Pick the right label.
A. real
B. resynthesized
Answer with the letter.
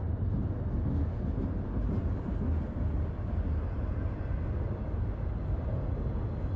A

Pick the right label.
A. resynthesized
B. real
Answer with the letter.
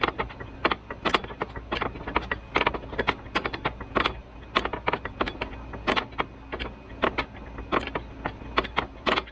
B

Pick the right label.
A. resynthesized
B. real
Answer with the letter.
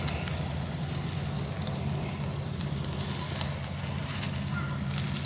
B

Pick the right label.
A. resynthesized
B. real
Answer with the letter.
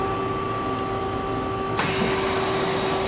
B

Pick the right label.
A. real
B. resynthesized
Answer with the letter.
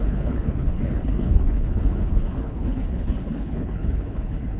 B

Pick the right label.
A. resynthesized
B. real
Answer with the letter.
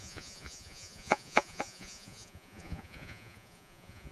A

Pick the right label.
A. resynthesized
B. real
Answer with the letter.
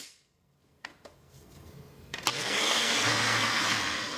A